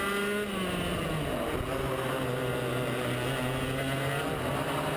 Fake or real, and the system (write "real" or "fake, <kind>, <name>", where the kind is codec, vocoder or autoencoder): real